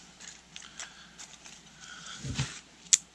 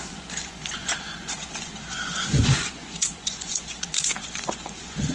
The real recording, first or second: first